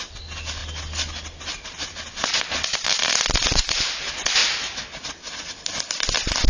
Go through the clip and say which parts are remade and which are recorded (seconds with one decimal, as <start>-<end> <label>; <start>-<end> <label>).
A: 0.0-6.5 recorded